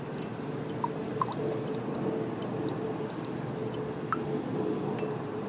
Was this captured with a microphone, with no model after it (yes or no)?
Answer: yes